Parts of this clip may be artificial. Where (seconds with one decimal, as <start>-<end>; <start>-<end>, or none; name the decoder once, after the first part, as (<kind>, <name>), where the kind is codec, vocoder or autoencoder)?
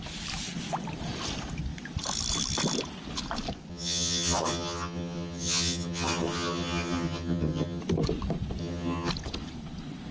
3.7-7.8 (vocoder, HiFi-GAN); 8.6-9.1